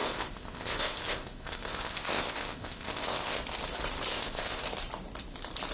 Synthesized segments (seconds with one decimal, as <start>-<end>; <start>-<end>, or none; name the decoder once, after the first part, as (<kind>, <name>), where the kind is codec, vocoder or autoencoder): 0.0-3.4 (codec, ZipCodec); 4.1-4.6